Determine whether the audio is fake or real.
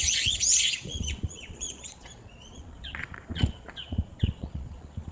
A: fake